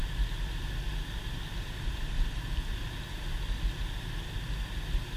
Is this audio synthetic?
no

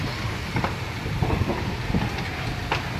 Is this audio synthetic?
no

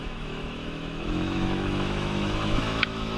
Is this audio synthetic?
yes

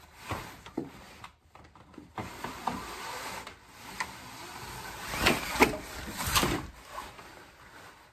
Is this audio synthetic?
no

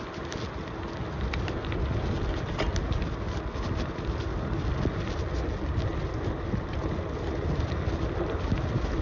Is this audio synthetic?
no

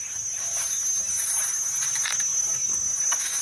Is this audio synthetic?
no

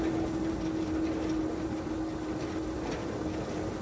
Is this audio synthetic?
no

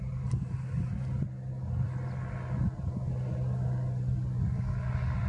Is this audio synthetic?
no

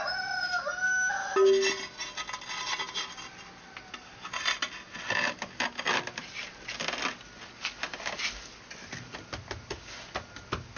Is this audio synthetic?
no